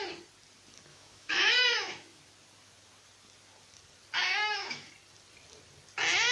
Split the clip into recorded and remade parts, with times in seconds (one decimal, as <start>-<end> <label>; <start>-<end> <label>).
0.0-0.9 recorded; 0.9-2.2 remade; 2.2-4.2 recorded; 4.2-4.9 remade; 4.9-6.3 recorded